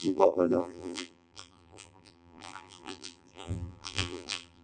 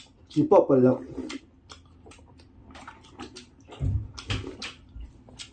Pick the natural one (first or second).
second